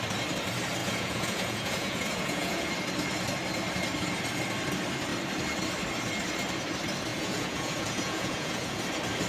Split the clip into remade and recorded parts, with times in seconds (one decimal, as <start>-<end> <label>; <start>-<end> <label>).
0.0-0.8 recorded; 0.8-2.7 remade; 2.7-7.1 recorded; 7.1-8.8 remade; 8.8-9.3 recorded

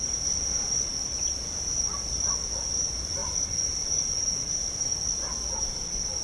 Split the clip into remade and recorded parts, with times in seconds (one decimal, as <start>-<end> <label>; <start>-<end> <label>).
0.0-6.2 recorded

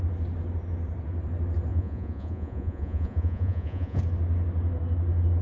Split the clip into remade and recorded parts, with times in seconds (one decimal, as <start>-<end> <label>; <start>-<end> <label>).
0.0-1.7 recorded; 1.7-4.0 remade; 4.0-5.4 recorded

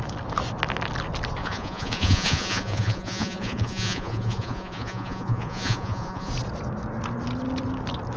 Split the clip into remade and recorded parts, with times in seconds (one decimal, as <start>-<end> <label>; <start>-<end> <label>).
0.0-1.4 recorded; 1.4-6.3 remade; 6.3-8.2 recorded

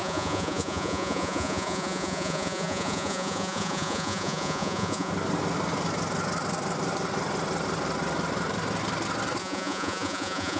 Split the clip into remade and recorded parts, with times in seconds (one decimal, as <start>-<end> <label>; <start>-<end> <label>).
0.0-5.1 remade; 5.1-9.4 recorded; 9.4-10.6 remade

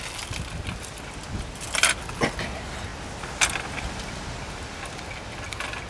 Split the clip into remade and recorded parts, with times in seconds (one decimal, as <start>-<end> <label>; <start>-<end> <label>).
0.0-5.9 recorded